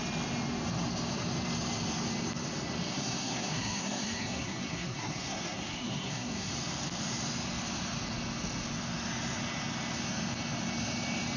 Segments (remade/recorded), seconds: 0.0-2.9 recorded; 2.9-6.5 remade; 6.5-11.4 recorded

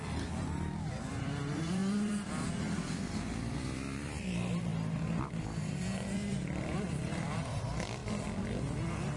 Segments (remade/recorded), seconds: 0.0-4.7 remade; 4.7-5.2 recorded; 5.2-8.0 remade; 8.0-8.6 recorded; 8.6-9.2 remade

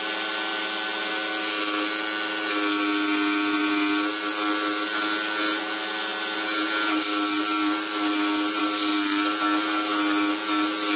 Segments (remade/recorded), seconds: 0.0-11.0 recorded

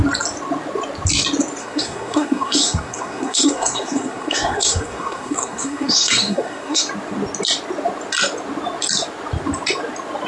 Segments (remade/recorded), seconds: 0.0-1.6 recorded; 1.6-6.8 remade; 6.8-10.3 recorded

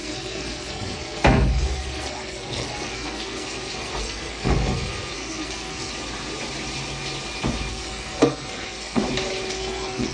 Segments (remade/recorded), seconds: 0.0-5.9 remade; 5.9-7.7 recorded; 7.7-9.0 remade; 9.0-9.5 recorded; 9.5-10.1 remade

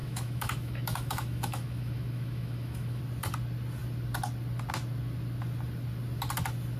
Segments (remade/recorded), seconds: 0.0-3.0 remade; 3.0-6.8 recorded